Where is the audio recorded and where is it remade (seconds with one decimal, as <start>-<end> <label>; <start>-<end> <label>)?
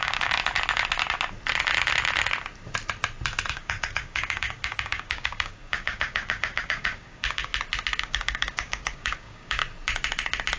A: 0.0-0.4 remade; 0.4-3.5 recorded; 3.5-7.5 remade; 7.5-8.0 recorded; 8.0-9.6 remade; 9.6-10.6 recorded